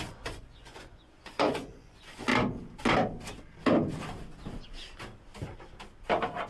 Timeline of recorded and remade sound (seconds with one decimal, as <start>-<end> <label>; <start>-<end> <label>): 0.0-2.3 remade; 2.3-6.5 recorded